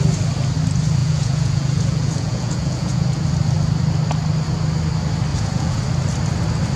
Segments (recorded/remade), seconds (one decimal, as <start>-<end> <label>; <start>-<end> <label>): 0.0-1.0 recorded; 1.0-3.3 remade; 3.3-5.3 recorded; 5.3-5.8 remade; 5.8-6.8 recorded